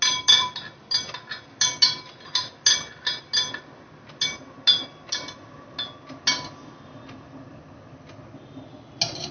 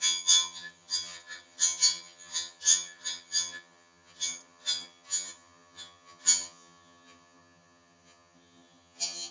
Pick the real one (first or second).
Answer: first